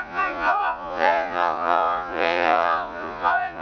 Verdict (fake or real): fake